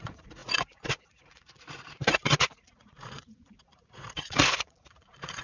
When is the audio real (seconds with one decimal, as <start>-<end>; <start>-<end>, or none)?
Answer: none